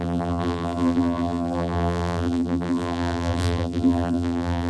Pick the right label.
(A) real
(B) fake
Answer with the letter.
B